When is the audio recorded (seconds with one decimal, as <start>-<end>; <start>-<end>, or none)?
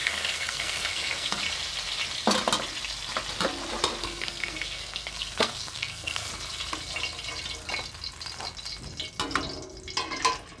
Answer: 1.4-4.0; 6.3-10.6